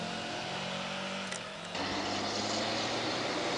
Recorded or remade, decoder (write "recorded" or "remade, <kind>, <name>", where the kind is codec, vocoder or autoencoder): recorded